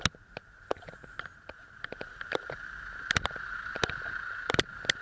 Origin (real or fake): real